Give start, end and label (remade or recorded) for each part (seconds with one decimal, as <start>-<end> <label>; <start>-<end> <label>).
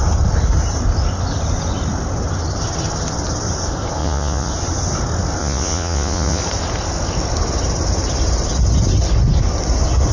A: 0.0-4.0 recorded; 4.0-4.5 remade; 4.5-5.4 recorded; 5.4-6.4 remade; 6.4-10.1 recorded